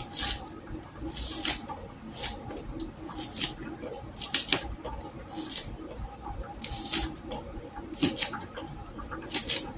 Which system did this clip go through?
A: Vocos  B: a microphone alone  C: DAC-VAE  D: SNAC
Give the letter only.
B